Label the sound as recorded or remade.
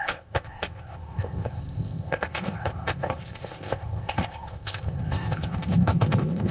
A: remade